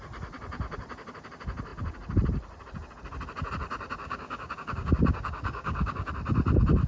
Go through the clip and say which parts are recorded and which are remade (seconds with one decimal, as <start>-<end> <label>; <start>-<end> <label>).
0.0-4.0 recorded; 4.0-6.1 remade; 6.1-6.9 recorded